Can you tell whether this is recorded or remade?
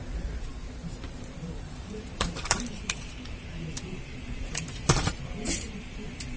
remade